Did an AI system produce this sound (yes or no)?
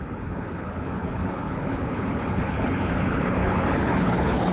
yes